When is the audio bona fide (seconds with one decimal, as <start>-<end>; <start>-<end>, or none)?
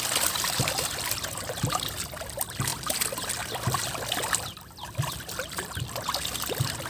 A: 0.0-6.9